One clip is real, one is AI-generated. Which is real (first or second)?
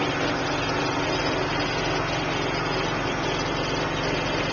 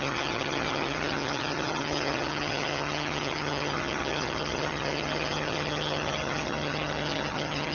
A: first